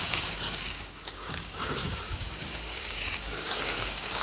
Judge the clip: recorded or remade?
remade